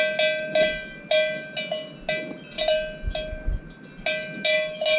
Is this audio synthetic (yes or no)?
no